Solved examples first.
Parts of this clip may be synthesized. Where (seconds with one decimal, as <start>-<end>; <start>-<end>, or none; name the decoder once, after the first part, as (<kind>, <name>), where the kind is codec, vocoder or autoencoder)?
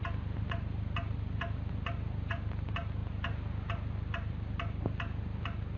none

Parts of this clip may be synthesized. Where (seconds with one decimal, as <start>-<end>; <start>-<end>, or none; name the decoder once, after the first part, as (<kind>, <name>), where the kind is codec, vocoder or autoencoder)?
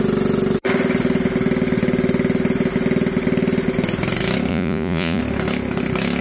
4.5-5.2 (vocoder, Vocos)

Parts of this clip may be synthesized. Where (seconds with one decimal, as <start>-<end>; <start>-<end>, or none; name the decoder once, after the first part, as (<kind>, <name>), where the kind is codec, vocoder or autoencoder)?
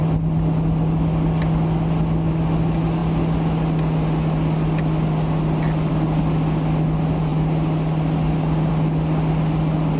none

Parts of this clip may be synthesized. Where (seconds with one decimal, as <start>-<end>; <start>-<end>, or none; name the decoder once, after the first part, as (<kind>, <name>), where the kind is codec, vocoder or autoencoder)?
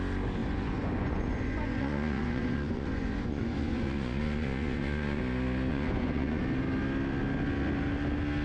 0.4-5.2 (vocoder, Vocos); 5.7-6.4